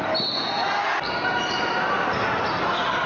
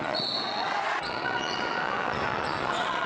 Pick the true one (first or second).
first